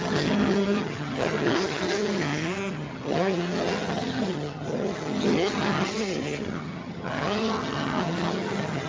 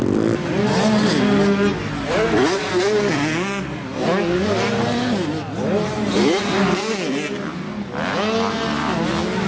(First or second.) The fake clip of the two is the first